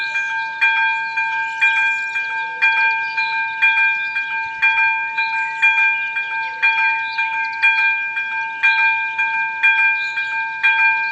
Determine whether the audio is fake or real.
real